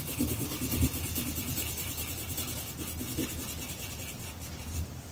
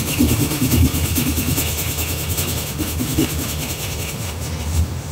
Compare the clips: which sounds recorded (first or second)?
first